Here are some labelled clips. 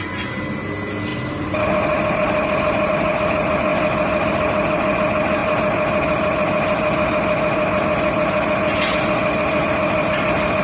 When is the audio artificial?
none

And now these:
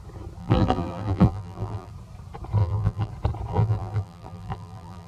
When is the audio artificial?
0.4-1.9; 2.6-3.1; 3.5-5.1

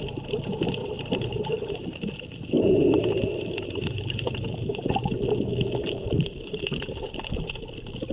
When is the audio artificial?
0.8-4.9; 5.8-7.3

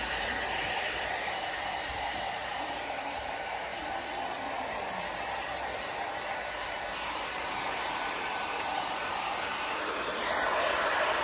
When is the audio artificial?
0.0-3.7; 6.3-11.2